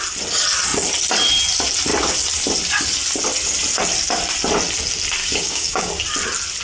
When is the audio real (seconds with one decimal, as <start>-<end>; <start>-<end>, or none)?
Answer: 0.0-5.2; 5.9-6.6